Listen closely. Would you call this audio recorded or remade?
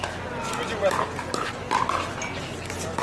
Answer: recorded